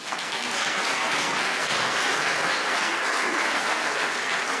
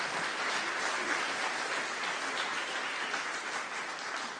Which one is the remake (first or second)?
first